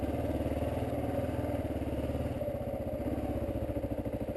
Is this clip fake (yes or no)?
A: no